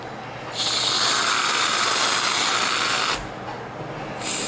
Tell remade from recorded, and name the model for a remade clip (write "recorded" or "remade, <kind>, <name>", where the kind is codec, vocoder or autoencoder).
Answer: recorded